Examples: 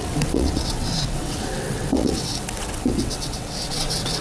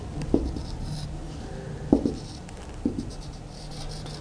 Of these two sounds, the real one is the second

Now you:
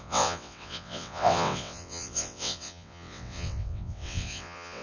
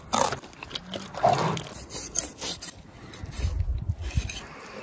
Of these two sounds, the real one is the second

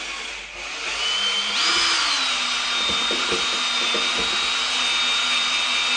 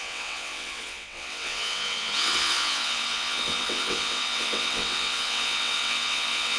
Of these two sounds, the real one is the first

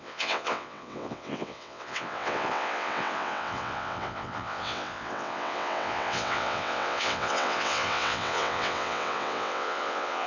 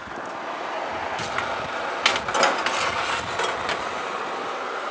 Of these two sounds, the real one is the second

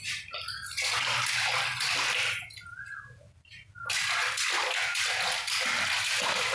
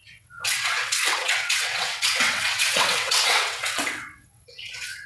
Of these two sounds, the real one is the first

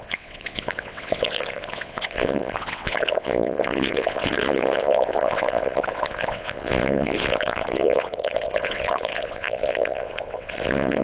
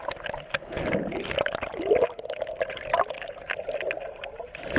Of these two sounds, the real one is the second